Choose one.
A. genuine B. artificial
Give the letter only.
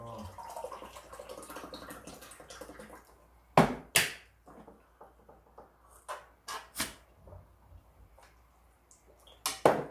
A